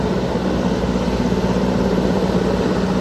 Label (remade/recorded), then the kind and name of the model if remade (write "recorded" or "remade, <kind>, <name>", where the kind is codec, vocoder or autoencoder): recorded